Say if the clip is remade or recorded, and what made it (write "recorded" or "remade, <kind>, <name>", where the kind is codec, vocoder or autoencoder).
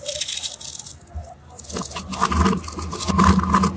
recorded